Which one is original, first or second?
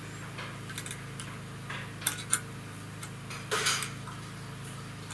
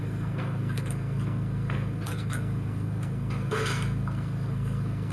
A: first